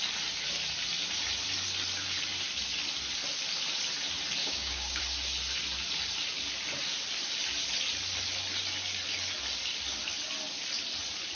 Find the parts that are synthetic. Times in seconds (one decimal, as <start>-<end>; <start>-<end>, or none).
4.4-5.0